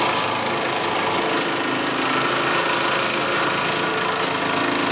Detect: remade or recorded recorded